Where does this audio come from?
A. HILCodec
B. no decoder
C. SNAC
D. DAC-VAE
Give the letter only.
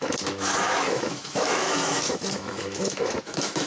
D